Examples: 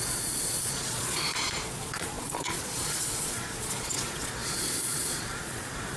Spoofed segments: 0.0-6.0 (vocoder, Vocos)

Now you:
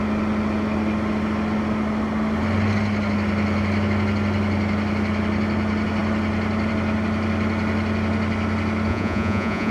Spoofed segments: 8.9-9.7 (vocoder, Vocos)

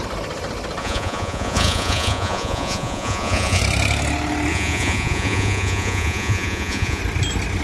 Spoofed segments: 0.8-3.6 (vocoder, Vocos); 4.5-7.0

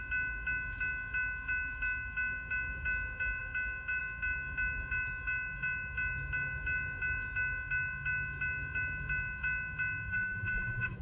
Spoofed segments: 10.1-11.0 (vocoder, Vocos)

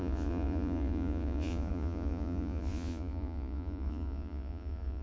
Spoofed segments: 0.0-5.0 (vocoder, Vocos)

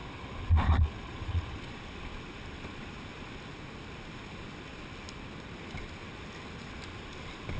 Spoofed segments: 0.0-1.8 (vocoder, Vocos)

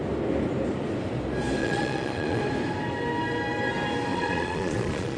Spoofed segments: 1.6-2.4 (vocoder, Vocos); 4.1-5.2